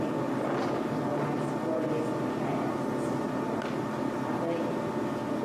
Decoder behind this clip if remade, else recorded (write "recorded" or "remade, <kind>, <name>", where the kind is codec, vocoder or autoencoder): recorded